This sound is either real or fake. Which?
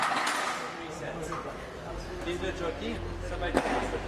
real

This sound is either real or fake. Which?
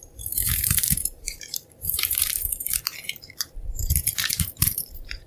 fake